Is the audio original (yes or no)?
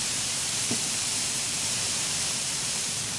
no